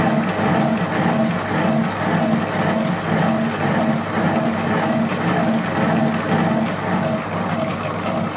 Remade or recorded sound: recorded